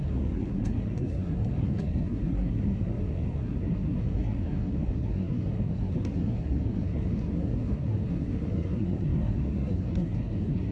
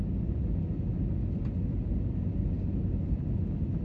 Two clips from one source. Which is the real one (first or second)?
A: second